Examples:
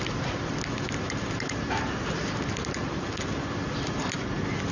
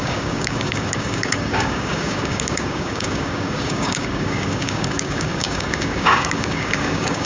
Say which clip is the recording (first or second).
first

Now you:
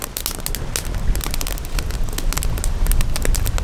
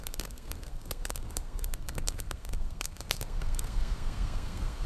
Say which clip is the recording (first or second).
first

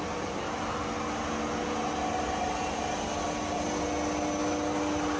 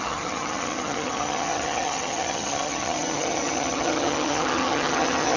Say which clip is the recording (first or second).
first